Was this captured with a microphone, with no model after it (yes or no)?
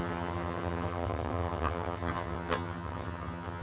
no